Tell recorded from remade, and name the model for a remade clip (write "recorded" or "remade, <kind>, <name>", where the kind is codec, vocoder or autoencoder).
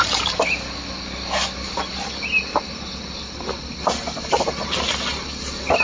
recorded